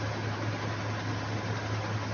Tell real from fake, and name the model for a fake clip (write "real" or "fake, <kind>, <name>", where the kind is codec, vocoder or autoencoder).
real